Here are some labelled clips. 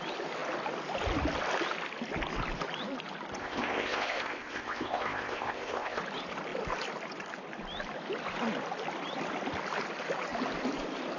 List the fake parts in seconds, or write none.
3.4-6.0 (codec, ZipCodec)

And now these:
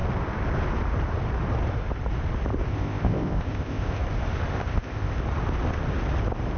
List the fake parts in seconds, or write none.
2.7-4.0 (codec, ZipCodec); 4.5-5.2

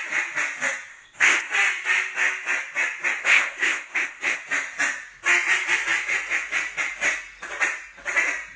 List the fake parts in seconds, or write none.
0.9-1.5 (codec, ZipCodec); 3.2-4.4

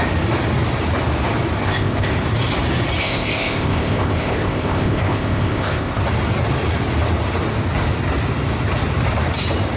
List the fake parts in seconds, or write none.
1.6-2.1 (codec, ZipCodec); 3.0-6.0